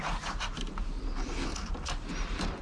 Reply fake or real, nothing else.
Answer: real